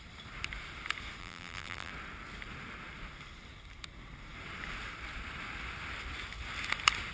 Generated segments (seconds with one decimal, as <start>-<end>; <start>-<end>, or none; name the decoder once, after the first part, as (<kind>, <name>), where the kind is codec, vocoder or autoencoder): 1.2-1.9 (vocoder, BigVGAN v2)